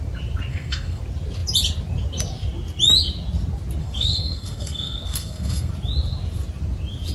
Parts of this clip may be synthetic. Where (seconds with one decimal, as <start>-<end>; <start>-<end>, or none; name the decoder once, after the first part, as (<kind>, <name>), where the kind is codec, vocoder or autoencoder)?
0.5-1.0 (codec, SNAC); 3.8-5.7